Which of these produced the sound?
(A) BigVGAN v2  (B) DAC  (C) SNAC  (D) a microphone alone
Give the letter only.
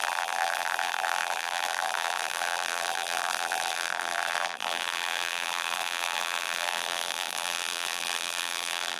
A